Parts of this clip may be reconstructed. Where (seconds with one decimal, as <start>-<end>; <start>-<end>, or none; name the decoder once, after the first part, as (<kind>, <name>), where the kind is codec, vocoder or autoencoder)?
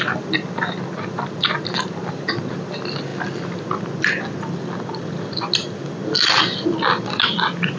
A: none